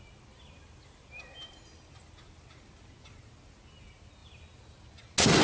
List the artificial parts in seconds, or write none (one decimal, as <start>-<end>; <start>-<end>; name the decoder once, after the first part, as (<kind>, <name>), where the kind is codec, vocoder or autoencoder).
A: none